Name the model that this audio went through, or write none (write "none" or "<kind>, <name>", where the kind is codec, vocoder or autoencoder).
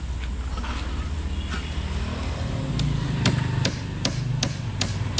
none